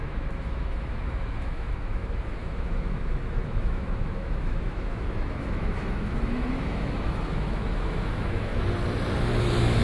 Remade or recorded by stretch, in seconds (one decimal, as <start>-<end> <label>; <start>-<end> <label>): 0.0-8.5 remade; 8.5-9.4 recorded; 9.4-9.8 remade